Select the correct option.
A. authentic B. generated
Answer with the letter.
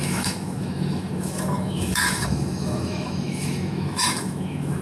B